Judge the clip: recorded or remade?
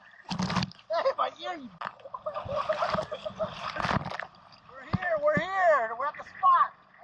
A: recorded